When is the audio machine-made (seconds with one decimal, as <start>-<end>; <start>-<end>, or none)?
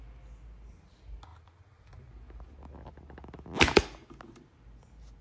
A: none